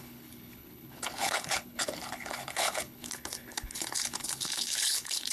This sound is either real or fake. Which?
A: fake